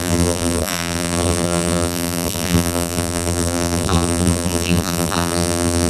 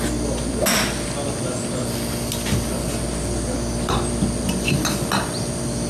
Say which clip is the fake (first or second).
first